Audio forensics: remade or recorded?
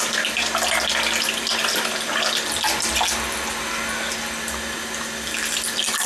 recorded